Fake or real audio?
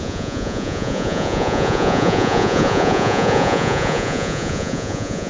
fake